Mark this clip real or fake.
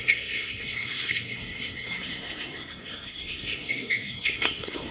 fake